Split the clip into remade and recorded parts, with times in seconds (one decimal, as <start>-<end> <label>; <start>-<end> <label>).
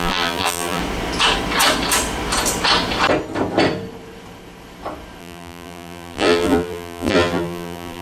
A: 0.0-0.8 remade; 0.8-5.2 recorded; 5.2-8.0 remade